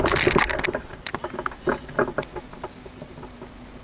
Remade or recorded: recorded